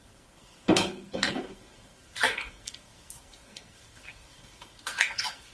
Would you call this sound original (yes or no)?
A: no